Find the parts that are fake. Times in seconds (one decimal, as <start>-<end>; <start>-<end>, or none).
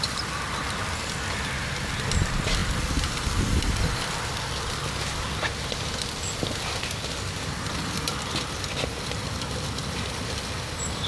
none